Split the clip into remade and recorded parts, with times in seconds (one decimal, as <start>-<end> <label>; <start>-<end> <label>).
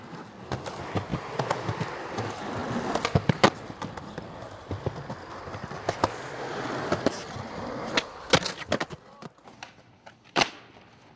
0.0-1.1 recorded; 1.1-2.0 remade; 2.0-8.8 recorded; 8.8-10.6 remade; 10.6-11.2 recorded